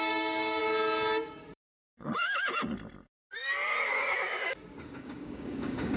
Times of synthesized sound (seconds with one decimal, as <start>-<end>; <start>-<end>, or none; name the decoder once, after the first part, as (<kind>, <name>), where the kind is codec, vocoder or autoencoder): 0.0-0.6 (codec, DAC); 1.3-2.6; 3.9-6.0